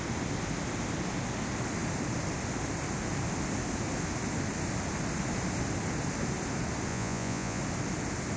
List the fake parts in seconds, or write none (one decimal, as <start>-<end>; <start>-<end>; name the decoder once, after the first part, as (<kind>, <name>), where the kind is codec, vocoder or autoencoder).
6.9-7.6 (vocoder, Vocos)